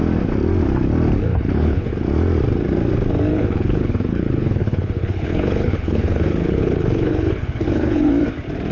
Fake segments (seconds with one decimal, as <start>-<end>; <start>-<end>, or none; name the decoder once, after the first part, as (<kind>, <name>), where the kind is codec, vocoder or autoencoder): 1.3-1.9 (codec, HILCodec); 3.3-8.1